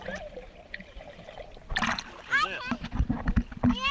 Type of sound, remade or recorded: recorded